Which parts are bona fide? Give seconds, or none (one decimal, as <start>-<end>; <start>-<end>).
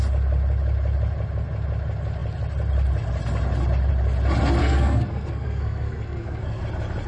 0.0-4.6; 6.6-7.1